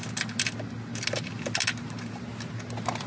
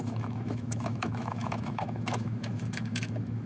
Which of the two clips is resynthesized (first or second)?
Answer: second